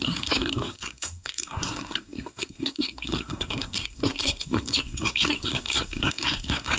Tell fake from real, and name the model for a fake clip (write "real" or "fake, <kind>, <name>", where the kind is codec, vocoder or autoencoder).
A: fake, codec, SNAC